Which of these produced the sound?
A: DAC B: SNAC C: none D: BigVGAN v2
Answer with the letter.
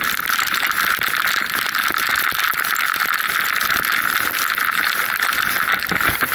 C